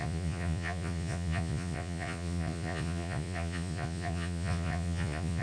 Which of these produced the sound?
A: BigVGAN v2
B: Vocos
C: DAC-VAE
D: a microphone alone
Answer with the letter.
B